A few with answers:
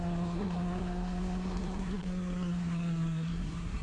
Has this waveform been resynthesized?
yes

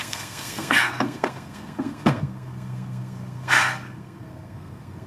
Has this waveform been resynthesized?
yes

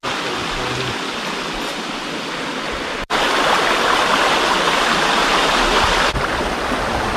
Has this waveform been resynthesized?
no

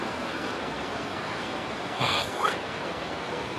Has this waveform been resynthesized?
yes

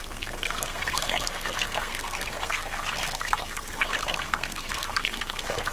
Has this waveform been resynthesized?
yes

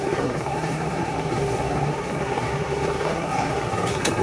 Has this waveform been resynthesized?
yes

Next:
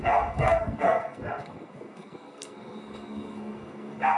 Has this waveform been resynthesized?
yes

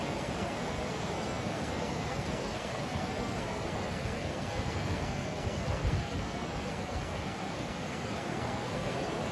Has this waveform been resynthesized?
yes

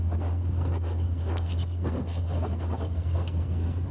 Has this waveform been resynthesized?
yes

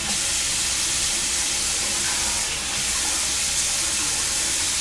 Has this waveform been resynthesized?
no